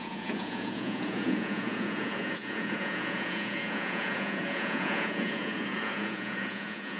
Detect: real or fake fake